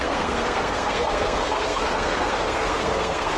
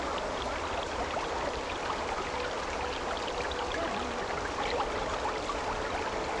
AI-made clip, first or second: first